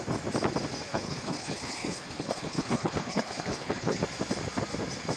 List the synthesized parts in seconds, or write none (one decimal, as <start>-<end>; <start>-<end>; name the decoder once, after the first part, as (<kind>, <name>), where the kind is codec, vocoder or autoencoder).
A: 0.9-4.0 (codec, HILCodec)